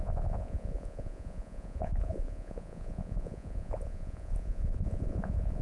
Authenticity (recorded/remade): remade